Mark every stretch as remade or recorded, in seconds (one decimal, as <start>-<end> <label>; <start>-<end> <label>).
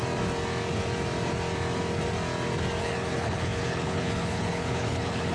0.0-2.8 recorded; 2.8-5.3 remade